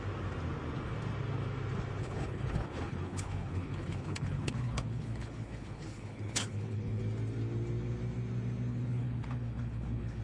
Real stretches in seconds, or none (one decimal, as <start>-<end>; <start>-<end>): 0.0-2.0; 7.0-8.7